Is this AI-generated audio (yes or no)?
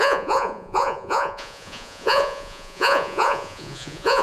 yes